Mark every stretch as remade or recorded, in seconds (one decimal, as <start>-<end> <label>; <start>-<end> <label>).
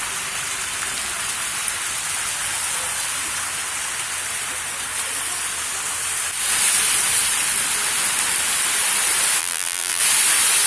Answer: 0.0-9.4 recorded; 9.4-10.0 remade; 10.0-10.7 recorded